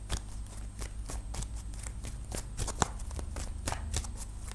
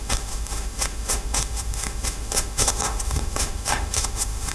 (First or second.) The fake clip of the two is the second